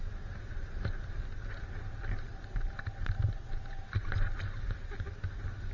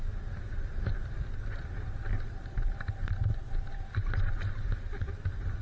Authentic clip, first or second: first